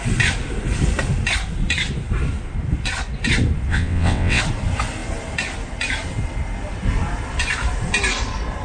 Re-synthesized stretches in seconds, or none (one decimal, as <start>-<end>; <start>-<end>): 3.7-4.4